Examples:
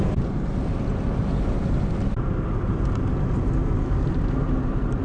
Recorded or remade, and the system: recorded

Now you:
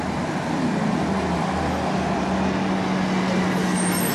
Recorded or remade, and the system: recorded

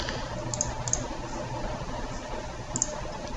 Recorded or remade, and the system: recorded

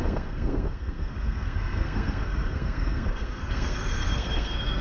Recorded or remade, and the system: remade, codec, SNAC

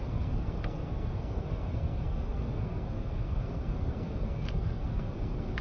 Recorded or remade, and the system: remade, codec, SNAC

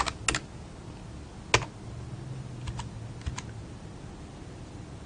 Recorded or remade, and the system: recorded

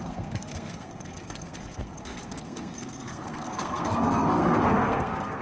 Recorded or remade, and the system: remade, codec, SNAC